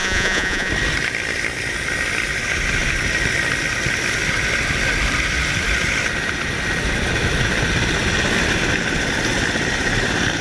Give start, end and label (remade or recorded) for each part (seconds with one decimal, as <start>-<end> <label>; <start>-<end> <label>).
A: 0.0-0.7 remade; 0.7-10.4 recorded